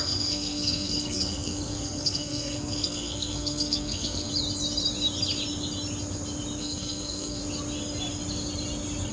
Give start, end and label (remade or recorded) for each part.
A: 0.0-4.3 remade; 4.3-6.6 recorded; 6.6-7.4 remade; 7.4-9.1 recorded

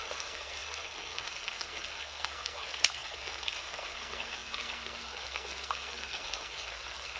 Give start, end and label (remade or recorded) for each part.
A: 0.0-7.2 remade

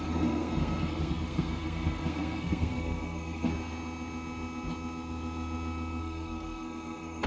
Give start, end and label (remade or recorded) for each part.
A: 0.0-3.5 remade; 3.5-6.0 recorded; 6.0-7.3 remade

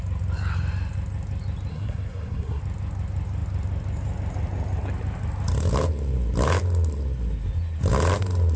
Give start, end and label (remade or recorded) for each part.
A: 0.0-1.7 recorded; 1.7-2.6 remade; 2.6-8.6 recorded

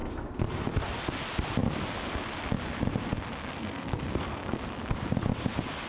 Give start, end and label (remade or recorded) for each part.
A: 0.0-3.5 recorded; 3.5-4.4 remade; 4.4-5.9 recorded

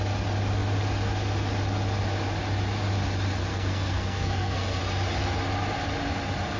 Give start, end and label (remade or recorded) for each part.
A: 0.0-3.5 recorded; 3.5-4.8 remade; 4.8-6.6 recorded

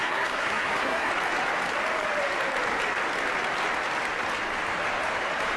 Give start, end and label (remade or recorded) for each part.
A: 0.0-1.1 remade; 1.1-5.6 recorded

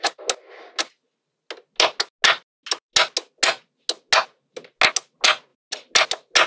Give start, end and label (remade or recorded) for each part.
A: 0.0-6.5 recorded